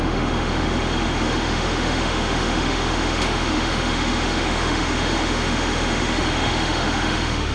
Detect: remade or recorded remade